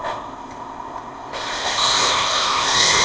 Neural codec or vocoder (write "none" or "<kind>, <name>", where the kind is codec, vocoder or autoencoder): codec, ZipCodec